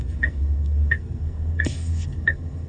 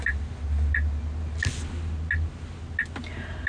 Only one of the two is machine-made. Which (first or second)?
first